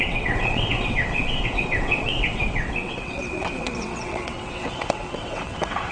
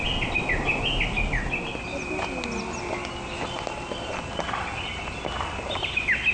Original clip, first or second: second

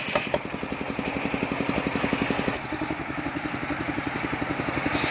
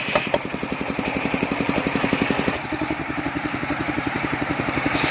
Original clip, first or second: first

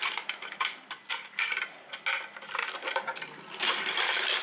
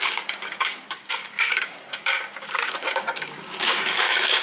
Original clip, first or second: first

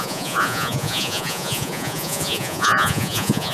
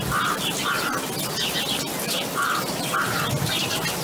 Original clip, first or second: second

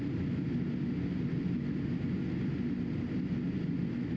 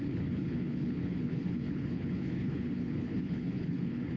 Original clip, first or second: first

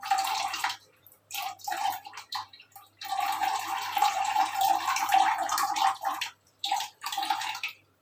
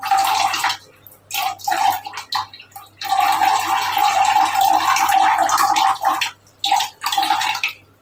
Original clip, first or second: second